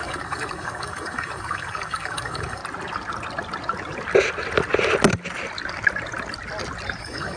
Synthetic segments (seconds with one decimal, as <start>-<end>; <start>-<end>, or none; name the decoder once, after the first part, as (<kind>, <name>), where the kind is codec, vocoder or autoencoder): 0.0-2.6 (codec, DAC); 7.0-7.4